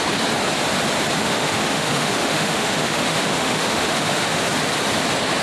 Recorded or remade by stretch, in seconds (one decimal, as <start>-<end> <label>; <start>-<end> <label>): 0.0-1.2 recorded; 1.2-4.4 remade; 4.4-5.4 recorded